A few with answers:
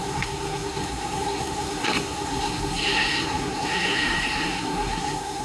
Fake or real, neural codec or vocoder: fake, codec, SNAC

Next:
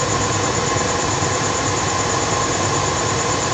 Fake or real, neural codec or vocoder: real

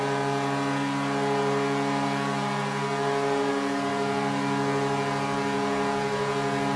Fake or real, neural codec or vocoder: real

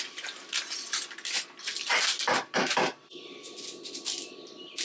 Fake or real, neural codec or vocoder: real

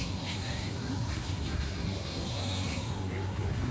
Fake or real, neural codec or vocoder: fake, codec, SNAC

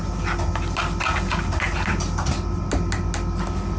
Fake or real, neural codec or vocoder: real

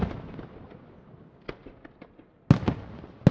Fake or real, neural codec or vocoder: real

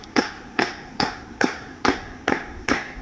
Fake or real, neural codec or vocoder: fake, codec, SNAC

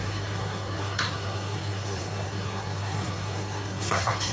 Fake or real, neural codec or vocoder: fake, codec, SNAC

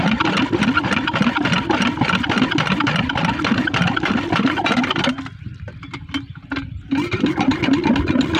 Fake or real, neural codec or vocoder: real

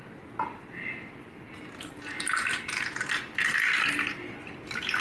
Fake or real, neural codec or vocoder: real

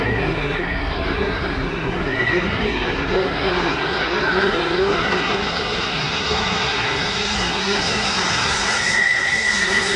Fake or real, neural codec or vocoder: fake, codec, SNAC